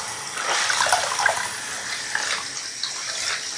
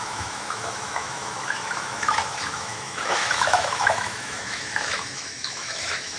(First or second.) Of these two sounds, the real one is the first